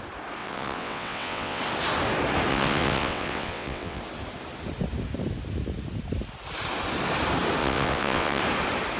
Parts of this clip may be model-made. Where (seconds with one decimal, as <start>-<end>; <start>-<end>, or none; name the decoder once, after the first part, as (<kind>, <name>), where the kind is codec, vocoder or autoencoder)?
0.4-1.6 (vocoder, WaveNeXt); 2.5-4.0; 7.6-8.4